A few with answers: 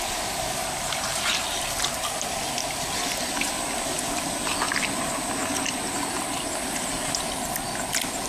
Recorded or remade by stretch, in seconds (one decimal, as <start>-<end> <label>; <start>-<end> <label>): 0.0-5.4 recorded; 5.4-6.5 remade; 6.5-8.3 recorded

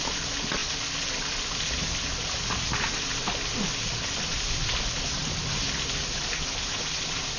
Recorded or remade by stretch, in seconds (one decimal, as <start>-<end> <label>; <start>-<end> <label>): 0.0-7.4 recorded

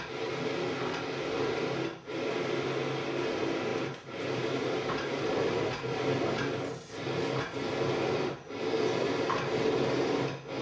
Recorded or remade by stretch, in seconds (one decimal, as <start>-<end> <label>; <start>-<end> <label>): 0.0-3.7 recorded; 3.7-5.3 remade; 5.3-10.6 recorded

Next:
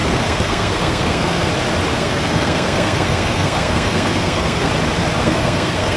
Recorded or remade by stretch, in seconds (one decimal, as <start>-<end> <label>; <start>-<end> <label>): 0.0-1.5 remade; 1.5-1.9 recorded; 1.9-4.7 remade; 4.7-5.2 recorded; 5.2-6.0 remade